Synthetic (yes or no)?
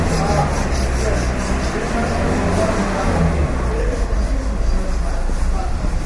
no